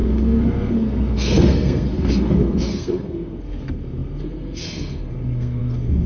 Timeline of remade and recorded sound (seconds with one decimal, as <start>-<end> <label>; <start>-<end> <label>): 0.0-6.1 remade